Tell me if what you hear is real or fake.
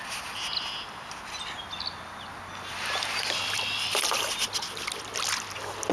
real